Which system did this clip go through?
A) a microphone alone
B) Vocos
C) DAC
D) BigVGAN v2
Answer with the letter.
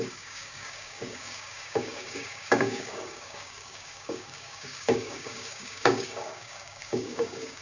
C